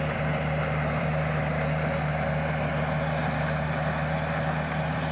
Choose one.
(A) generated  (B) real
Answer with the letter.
A